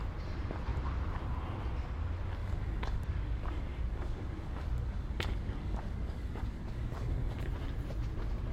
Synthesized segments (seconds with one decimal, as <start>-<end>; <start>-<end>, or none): 2.4-7.5

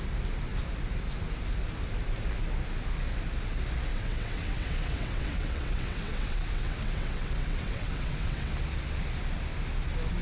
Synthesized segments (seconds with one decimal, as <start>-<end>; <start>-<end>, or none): 3.9-8.5

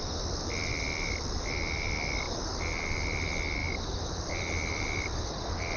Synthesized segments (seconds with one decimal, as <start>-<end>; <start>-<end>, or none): none

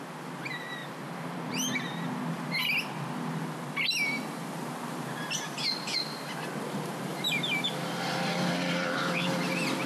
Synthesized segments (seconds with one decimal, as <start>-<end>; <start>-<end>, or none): 0.8-2.1